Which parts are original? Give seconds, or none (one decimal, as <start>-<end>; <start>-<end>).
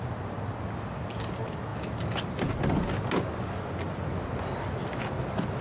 0.0-5.6